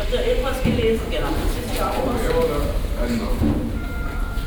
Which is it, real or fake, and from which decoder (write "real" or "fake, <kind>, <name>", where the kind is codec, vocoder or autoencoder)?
fake, vocoder, BigVGAN v2